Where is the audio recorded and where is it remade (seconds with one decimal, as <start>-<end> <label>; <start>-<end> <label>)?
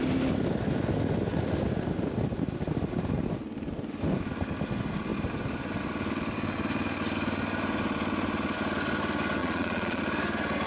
0.0-9.4 recorded; 9.4-10.0 remade; 10.0-10.7 recorded